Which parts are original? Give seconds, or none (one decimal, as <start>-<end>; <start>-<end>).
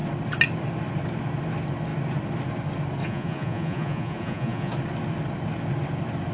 0.0-3.0; 4.7-6.3